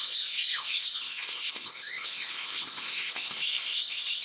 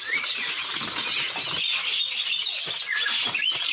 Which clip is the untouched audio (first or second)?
second